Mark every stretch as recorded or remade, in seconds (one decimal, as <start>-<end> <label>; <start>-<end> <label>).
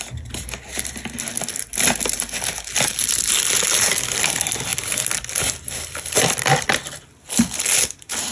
0.0-8.3 recorded